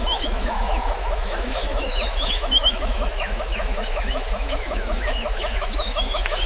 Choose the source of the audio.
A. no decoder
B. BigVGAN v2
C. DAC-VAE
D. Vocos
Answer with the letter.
C